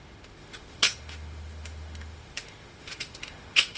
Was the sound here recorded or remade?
remade